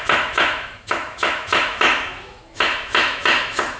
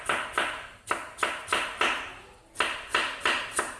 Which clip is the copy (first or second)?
first